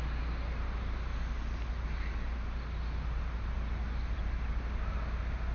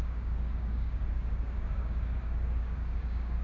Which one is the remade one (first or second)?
second